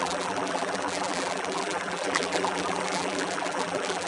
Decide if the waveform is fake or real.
fake